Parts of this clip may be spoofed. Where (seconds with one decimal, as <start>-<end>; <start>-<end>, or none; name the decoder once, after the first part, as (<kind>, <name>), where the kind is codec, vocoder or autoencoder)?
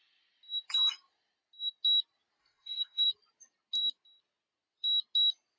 2.4-3.1 (codec, SNAC)